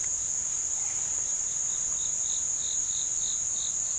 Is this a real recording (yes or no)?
yes